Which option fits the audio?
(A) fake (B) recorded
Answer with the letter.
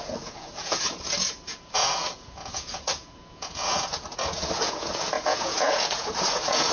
A